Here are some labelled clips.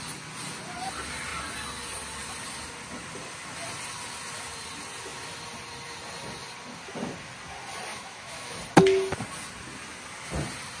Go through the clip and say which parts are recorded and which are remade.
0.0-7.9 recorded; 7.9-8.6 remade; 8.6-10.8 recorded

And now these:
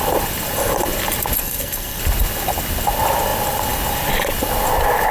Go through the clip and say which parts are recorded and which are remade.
0.0-1.4 recorded; 1.4-2.0 remade; 2.0-5.1 recorded

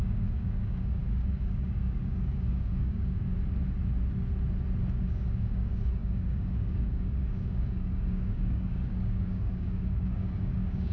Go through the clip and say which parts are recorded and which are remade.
0.0-3.3 remade; 3.3-4.9 recorded; 4.9-10.9 remade

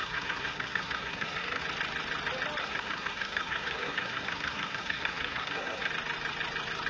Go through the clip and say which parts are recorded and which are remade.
0.0-1.6 remade; 1.6-2.6 recorded; 2.6-5.9 remade; 5.9-6.9 recorded

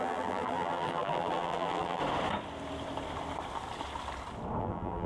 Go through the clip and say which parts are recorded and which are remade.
0.0-2.0 remade; 2.0-4.6 recorded; 4.6-5.1 remade

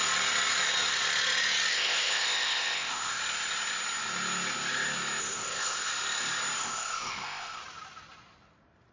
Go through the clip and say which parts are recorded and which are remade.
0.0-1.7 recorded; 1.7-3.2 remade; 3.2-5.2 recorded; 5.2-5.9 remade; 5.9-6.6 recorded; 6.6-7.6 remade; 7.6-8.9 recorded